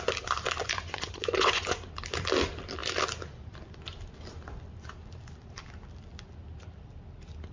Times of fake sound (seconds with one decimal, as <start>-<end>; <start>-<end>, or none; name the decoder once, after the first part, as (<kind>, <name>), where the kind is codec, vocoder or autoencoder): 0.6-1.8 (vocoder, Vocos)